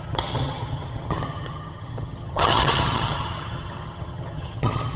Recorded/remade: remade